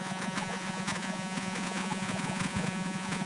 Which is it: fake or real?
fake